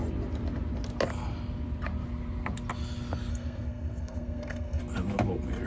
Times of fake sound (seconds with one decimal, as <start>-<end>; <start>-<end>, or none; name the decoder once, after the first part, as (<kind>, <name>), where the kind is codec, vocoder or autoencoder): 3.3-4.8 (codec, SNAC)